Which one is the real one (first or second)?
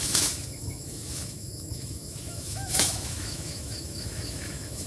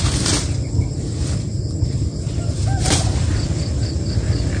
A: second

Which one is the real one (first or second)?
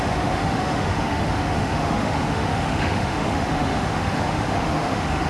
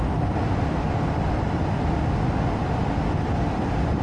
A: second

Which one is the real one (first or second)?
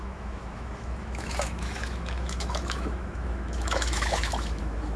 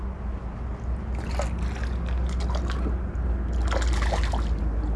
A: second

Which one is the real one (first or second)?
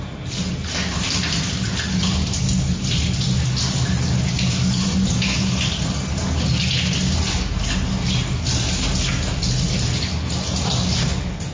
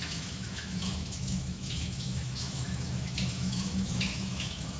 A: first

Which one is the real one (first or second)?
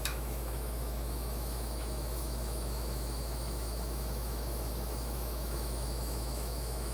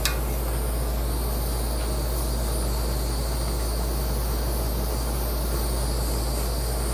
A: second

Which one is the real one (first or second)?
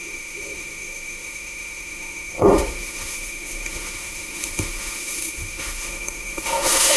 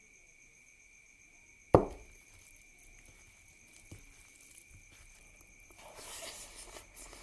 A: second